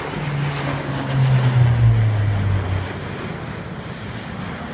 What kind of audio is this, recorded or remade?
recorded